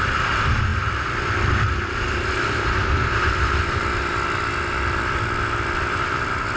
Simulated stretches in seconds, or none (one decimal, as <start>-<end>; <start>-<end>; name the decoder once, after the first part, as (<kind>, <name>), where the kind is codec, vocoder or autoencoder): 0.0-4.1 (vocoder, BigVGAN v2); 4.8-6.6